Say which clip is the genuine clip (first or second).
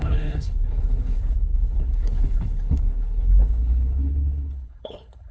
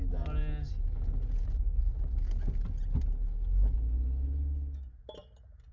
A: second